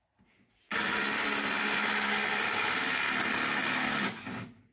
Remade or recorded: recorded